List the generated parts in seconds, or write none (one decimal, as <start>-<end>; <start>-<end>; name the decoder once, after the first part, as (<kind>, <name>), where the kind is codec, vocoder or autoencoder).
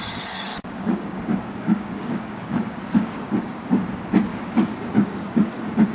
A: 0.5-3.7 (codec, DAC); 4.3-5.9